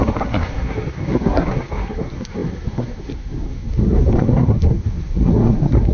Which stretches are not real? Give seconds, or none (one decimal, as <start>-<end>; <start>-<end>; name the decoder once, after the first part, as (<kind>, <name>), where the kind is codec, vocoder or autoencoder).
0.0-5.9 (codec, SNAC)